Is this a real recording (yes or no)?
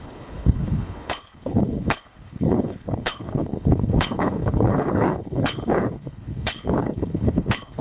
no